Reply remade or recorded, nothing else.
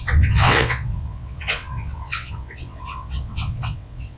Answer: remade